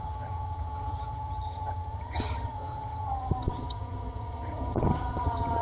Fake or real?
fake